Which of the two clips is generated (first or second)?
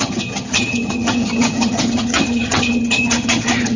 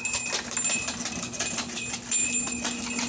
first